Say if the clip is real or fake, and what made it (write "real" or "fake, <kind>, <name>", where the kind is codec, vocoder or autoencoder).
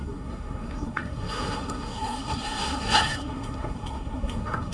fake, codec, SNAC